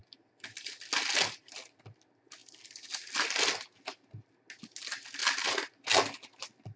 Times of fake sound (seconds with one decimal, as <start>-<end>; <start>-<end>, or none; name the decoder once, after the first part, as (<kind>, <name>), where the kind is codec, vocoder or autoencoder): none